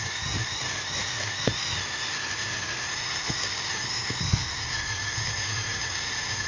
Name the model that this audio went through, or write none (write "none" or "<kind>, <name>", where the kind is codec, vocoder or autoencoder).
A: none